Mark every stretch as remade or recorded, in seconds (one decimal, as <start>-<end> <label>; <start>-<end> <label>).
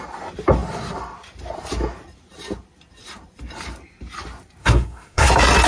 0.0-4.6 recorded; 4.6-5.3 remade; 5.3-5.7 recorded